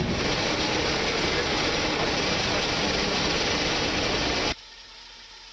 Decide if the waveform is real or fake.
real